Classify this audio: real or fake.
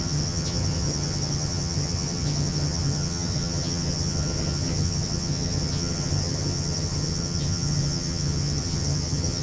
fake